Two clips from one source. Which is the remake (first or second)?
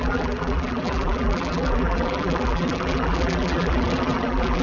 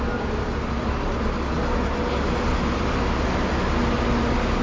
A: first